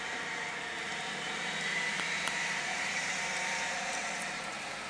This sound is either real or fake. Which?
fake